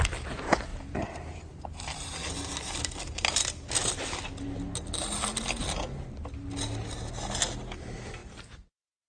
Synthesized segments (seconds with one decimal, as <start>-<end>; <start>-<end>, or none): 0.7-2.1

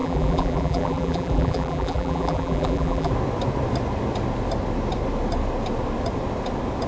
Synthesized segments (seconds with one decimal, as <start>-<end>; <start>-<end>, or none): 0.0-3.1

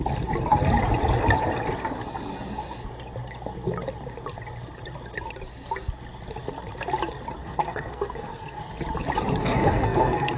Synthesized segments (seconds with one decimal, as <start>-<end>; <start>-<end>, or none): 7.4-8.6; 9.4-10.4

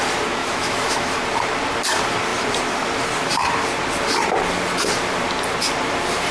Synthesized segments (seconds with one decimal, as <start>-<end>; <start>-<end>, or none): 0.4-1.2